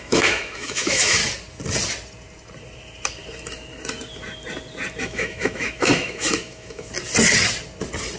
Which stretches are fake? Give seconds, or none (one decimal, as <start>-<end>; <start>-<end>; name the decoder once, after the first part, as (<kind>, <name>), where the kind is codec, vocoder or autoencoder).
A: 0.0-1.2 (autoencoder, DAC-VAE); 5.0-6.9